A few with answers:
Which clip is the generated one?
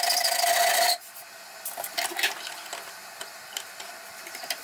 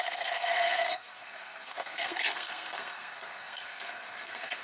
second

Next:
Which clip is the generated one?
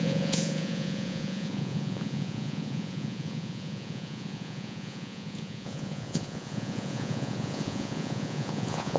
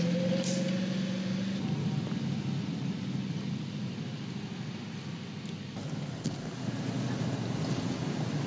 first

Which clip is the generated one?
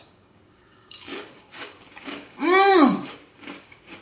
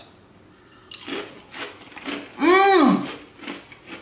first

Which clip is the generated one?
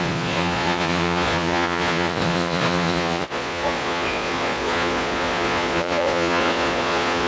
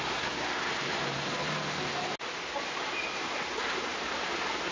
first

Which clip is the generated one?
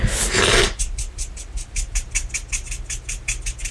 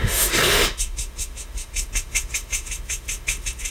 second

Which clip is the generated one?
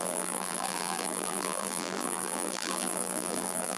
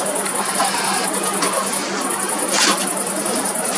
first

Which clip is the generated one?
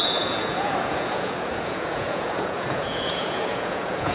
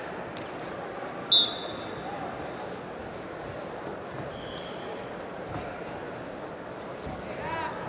first